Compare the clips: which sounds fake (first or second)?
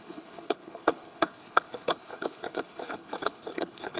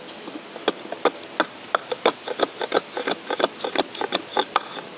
first